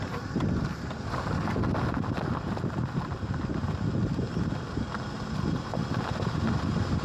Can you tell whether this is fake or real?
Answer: real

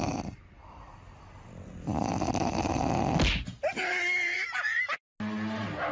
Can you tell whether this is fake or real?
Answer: real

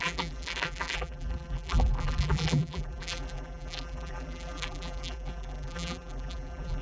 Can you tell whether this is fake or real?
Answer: fake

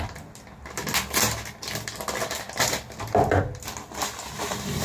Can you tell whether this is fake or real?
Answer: real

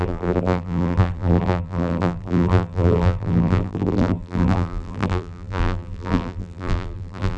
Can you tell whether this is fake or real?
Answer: fake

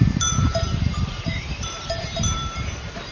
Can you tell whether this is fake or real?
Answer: fake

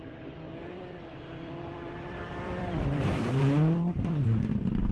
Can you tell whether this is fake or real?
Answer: fake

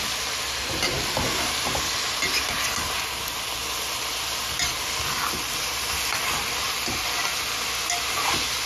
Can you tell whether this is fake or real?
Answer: real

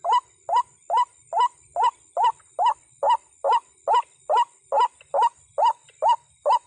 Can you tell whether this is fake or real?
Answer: real